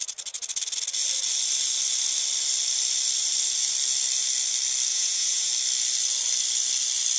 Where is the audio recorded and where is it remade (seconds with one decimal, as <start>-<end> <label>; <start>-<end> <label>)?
0.0-4.9 recorded; 4.9-5.5 remade; 5.5-7.2 recorded